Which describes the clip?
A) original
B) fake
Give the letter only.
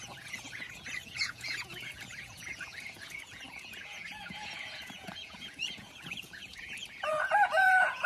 B